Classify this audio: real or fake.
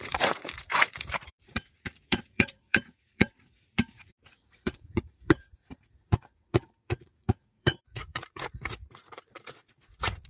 fake